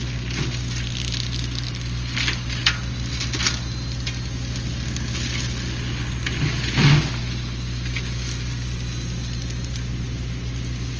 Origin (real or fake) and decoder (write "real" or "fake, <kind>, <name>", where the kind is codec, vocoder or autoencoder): real